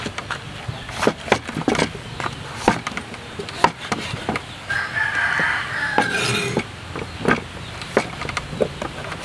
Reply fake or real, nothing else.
real